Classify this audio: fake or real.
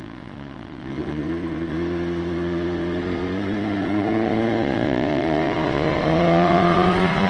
fake